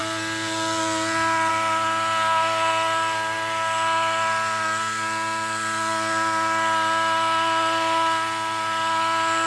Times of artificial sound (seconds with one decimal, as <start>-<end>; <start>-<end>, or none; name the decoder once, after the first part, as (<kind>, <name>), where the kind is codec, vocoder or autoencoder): none